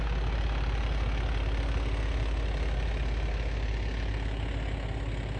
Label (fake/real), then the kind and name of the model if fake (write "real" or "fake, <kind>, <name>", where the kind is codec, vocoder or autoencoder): real